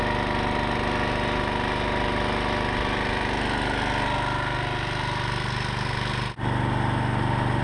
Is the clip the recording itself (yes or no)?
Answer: yes